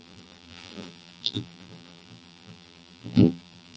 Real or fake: fake